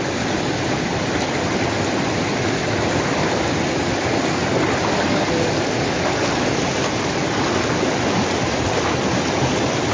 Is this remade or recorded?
recorded